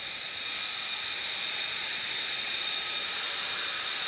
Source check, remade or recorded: recorded